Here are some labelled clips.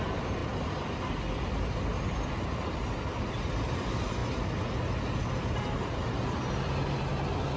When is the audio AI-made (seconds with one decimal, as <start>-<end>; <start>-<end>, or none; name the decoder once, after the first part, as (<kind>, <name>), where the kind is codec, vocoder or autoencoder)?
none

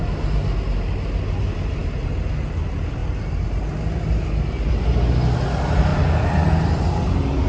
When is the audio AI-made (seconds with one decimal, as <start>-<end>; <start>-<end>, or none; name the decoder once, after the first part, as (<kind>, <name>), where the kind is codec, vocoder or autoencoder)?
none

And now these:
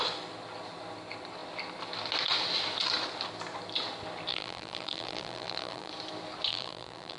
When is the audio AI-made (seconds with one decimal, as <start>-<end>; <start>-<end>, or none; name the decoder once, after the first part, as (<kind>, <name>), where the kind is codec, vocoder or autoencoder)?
4.3-5.9 (vocoder, BigVGAN v2); 6.5-7.2

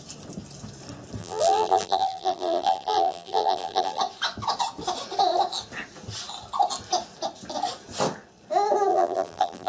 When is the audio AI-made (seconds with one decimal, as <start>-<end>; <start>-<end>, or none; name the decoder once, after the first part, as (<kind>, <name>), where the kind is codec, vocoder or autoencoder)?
1.2-4.0 (vocoder, BigVGAN v2); 8.9-9.7

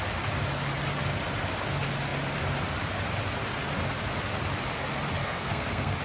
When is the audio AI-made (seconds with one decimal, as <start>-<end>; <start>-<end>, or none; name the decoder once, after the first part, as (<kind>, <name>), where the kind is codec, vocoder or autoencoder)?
5.2-6.0 (codec, SNAC)

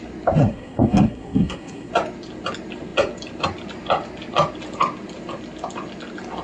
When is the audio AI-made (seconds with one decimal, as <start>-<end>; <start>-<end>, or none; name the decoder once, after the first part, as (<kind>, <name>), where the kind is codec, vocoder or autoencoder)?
0.4-1.9 (codec, SNAC)